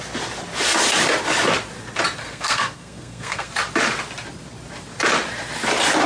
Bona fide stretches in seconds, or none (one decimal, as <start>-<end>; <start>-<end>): 0.0-2.2; 3.5-6.1